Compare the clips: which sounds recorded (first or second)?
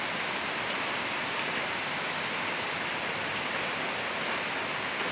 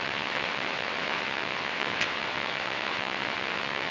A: first